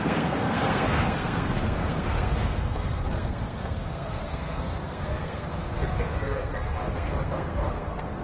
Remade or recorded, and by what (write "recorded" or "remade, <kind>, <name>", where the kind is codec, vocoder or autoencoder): remade, codec, SNAC